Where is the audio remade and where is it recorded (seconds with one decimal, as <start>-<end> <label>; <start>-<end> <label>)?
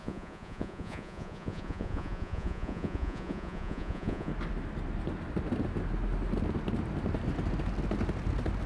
0.0-4.3 remade; 4.3-8.7 recorded